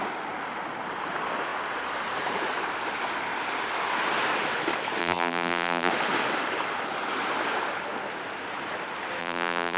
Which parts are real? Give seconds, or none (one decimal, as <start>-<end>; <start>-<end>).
0.0-5.0; 5.9-9.2